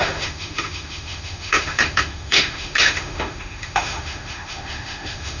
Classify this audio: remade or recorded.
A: remade